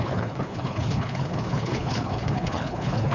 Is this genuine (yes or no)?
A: no